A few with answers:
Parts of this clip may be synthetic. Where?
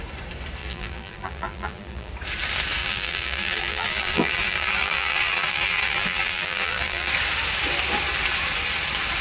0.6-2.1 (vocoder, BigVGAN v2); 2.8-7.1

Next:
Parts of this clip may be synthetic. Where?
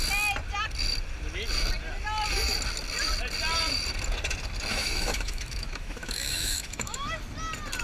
4.7-7.1 (autoencoder, DAC-VAE)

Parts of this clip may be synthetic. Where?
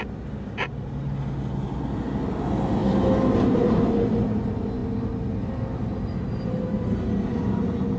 none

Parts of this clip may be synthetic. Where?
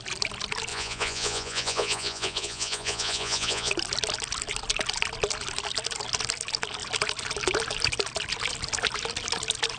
0.7-3.7 (vocoder, Vocos)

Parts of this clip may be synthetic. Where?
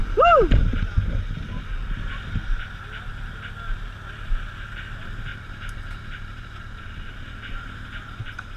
0.0-0.6 (vocoder, BigVGAN v2); 5.3-7.1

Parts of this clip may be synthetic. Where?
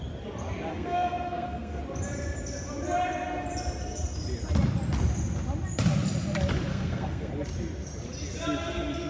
0.7-1.8 (codec, SNAC); 6.7-7.3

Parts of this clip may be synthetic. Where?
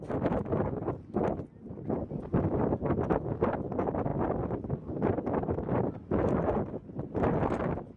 none